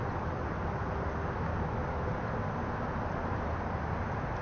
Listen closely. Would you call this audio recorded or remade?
recorded